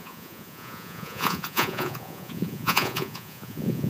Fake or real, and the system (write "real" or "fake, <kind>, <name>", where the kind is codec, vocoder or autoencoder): fake, vocoder, Vocos